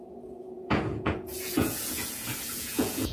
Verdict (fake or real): fake